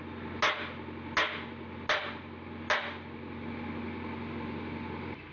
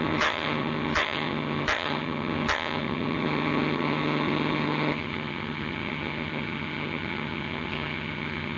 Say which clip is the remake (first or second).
second